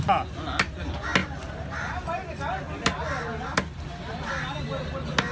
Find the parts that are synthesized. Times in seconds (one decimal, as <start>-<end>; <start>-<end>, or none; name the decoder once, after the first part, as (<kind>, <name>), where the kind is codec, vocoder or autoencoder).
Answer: none